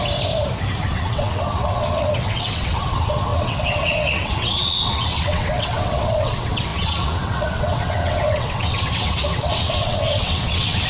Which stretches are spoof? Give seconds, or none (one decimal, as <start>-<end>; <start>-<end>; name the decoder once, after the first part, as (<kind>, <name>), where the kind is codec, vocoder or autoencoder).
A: 0.9-10.9 (vocoder, WaveNeXt)